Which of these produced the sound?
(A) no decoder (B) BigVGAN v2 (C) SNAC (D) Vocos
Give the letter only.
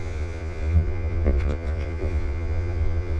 D